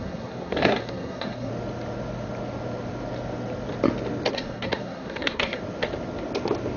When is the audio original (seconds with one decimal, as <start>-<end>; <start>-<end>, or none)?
1.5-4.3; 5.6-6.8